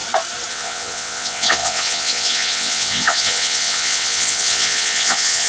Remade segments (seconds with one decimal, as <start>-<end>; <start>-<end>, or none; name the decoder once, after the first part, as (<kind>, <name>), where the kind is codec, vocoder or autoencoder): 0.5-5.5 (vocoder, WaveNeXt)